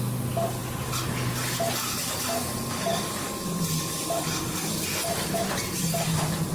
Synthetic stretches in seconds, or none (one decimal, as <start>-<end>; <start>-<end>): none